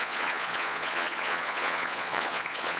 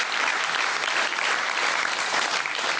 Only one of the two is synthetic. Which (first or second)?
first